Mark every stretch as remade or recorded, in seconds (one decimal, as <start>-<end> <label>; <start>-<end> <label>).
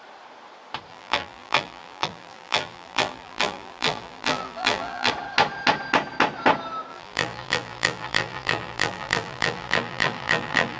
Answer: 0.0-0.9 recorded; 0.9-5.1 remade; 5.1-6.9 recorded; 6.9-10.8 remade